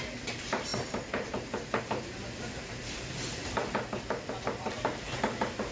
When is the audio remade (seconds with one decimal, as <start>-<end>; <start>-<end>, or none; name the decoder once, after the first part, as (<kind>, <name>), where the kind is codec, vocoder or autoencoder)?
0.0-3.6 (vocoder, BigVGAN v2); 4.7-5.7